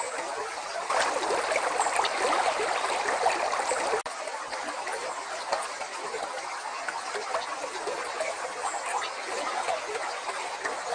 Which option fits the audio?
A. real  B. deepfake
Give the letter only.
A